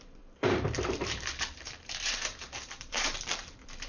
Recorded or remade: remade